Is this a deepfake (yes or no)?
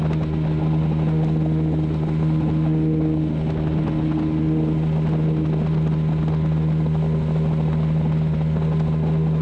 no